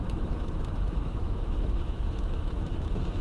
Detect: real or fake fake